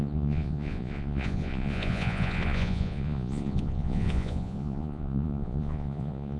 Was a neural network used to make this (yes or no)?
yes